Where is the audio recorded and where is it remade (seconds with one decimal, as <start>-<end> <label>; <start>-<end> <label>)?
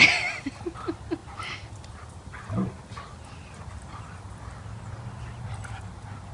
0.0-6.3 recorded